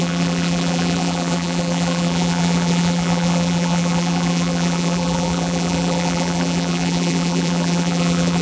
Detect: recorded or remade remade